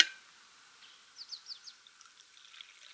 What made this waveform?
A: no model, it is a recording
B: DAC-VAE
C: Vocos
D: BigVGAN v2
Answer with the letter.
A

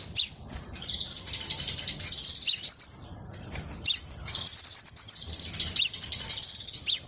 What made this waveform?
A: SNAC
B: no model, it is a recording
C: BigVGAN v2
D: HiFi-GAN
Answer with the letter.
C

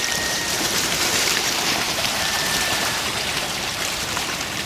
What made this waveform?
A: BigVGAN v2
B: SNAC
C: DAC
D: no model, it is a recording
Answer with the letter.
A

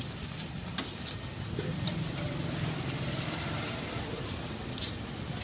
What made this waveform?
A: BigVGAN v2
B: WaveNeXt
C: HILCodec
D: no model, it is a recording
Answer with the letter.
D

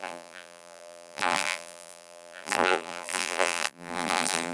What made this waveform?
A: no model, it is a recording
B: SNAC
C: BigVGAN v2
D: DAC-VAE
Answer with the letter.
C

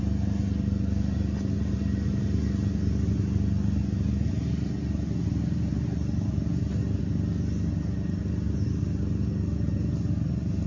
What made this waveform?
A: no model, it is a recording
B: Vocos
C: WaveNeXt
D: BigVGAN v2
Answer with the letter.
A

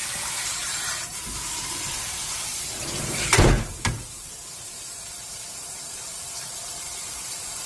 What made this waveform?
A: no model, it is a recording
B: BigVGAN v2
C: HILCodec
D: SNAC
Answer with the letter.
B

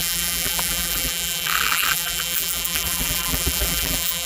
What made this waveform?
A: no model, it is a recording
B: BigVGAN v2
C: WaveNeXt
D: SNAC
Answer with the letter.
B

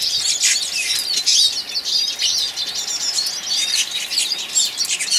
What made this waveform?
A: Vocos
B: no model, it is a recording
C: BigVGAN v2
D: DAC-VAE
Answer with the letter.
B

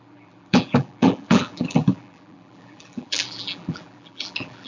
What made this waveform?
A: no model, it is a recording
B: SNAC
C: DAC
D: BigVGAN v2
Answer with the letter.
D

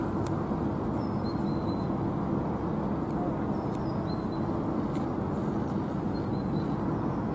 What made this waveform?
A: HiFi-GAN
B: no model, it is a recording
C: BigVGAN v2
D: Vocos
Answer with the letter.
B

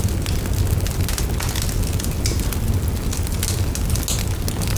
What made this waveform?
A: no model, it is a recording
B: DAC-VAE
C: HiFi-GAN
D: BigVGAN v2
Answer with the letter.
A